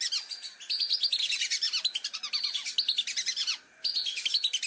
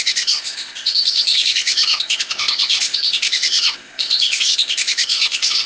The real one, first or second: first